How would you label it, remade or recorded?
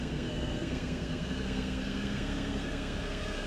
remade